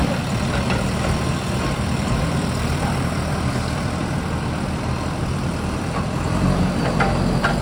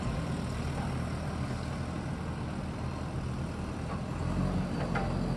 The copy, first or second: first